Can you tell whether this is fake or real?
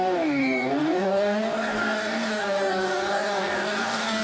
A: fake